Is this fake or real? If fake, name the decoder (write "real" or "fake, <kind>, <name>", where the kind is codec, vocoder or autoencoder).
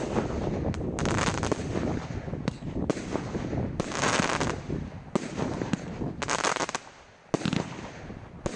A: real